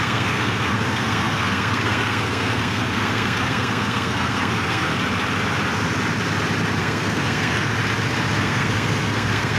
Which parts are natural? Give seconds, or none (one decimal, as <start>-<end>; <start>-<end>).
4.9-6.8; 7.7-8.4